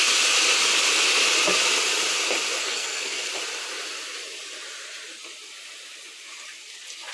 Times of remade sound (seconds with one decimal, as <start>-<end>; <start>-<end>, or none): 2.6-3.3